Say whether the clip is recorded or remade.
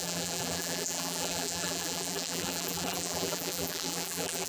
remade